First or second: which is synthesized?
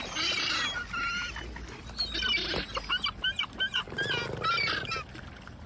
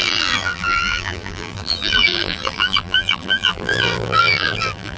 second